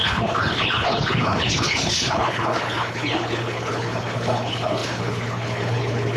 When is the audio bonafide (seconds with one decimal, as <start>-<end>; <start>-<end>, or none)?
none